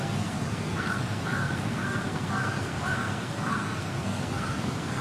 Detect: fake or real fake